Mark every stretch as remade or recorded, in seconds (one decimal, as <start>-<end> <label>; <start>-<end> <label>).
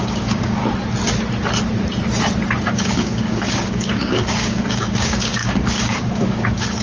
0.0-0.6 remade; 0.6-2.6 recorded; 2.6-6.8 remade